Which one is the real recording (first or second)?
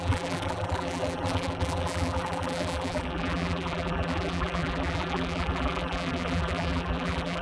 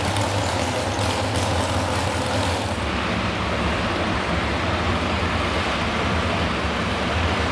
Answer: second